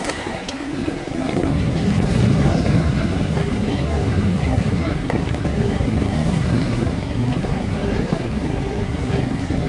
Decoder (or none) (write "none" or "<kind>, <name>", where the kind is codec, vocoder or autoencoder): codec, SNAC